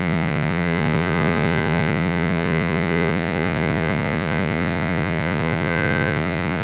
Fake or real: fake